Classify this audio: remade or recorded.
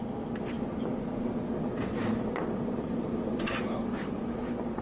recorded